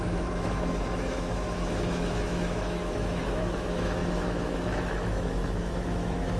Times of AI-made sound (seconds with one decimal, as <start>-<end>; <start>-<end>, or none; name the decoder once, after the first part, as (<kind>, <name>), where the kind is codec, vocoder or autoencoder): 0.0-6.4 (autoencoder, DAC-VAE)